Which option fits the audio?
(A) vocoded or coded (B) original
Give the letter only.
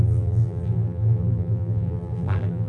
A